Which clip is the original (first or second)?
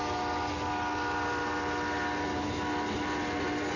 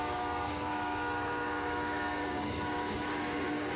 first